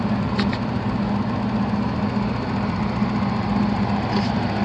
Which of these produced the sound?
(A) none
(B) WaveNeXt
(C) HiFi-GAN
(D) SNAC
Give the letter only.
A